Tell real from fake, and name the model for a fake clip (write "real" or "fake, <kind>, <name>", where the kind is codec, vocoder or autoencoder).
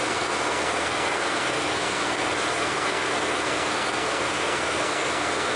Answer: fake, codec, SNAC